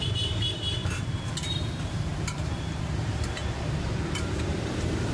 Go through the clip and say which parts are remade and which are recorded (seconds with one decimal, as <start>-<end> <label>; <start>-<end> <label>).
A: 0.0-5.1 remade